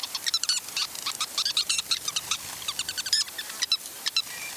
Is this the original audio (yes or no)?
no